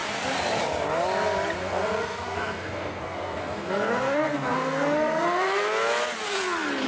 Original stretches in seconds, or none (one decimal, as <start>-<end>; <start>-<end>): 0.0-1.6; 5.7-6.9